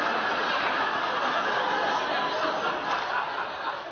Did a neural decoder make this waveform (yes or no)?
no